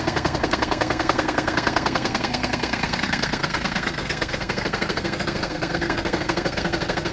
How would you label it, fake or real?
fake